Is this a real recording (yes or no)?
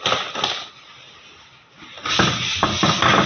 yes